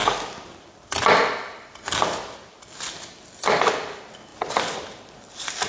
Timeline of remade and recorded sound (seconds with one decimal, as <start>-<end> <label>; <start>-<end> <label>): 0.0-5.7 recorded